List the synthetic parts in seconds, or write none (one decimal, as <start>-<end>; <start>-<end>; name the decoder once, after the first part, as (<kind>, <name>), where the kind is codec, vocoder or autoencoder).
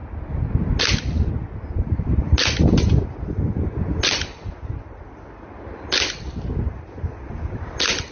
none